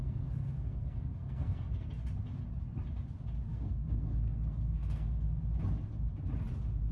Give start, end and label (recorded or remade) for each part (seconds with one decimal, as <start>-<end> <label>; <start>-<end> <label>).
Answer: 0.0-2.0 remade; 2.0-3.5 recorded; 3.5-5.4 remade; 5.4-6.9 recorded